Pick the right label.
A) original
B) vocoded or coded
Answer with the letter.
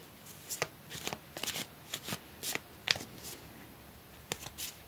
A